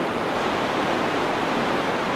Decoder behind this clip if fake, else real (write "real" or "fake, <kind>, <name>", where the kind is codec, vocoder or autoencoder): fake, vocoder, BigVGAN v2